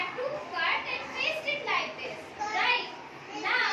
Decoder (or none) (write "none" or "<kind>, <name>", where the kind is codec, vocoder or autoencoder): none